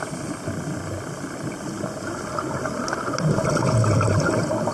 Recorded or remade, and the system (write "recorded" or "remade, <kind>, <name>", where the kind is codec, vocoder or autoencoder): recorded